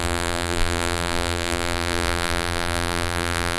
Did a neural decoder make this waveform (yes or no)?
yes